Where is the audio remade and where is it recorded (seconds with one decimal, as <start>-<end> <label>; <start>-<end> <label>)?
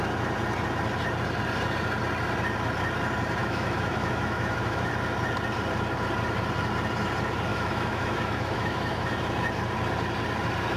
0.0-3.4 recorded; 3.4-4.9 remade; 4.9-7.5 recorded; 7.5-9.2 remade; 9.2-10.8 recorded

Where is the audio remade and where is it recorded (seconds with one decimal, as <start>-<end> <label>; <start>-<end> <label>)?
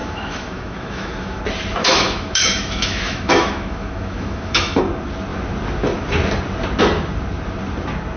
0.0-1.4 remade; 1.4-1.8 recorded; 1.8-4.8 remade; 4.8-8.2 recorded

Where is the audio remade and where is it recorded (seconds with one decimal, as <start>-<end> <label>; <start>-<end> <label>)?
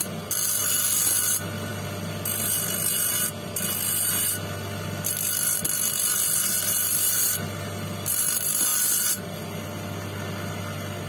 0.0-11.1 recorded